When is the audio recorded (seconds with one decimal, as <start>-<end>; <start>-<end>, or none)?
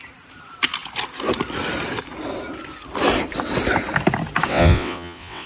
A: 0.0-4.5